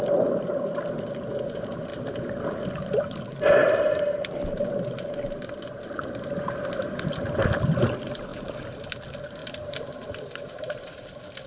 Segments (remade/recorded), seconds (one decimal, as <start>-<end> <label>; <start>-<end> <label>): 0.0-3.6 recorded; 3.6-4.2 remade; 4.2-8.3 recorded; 8.3-8.9 remade; 8.9-9.4 recorded; 9.4-11.0 remade; 11.0-11.5 recorded

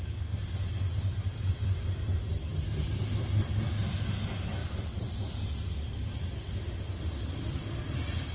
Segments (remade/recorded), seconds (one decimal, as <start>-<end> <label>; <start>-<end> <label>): 0.0-8.3 recorded

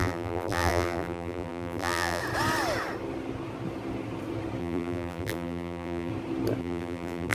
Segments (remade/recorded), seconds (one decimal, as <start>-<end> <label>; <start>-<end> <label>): 0.0-2.2 remade; 2.2-4.6 recorded; 4.6-6.1 remade; 6.1-6.6 recorded; 6.6-7.3 remade

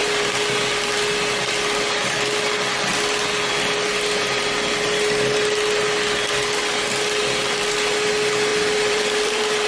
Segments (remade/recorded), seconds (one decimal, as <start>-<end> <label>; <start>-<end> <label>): 0.0-8.5 recorded; 8.5-9.7 remade

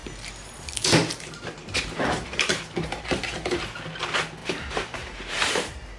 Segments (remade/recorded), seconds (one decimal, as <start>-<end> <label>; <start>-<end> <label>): 0.0-3.6 remade; 3.6-4.4 recorded; 4.4-6.0 remade